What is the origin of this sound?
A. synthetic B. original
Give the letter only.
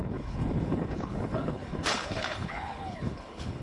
A